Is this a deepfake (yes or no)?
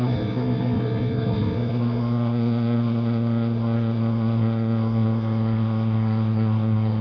yes